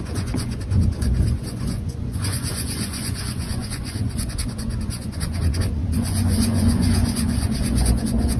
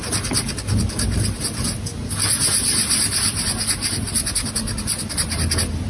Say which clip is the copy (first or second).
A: first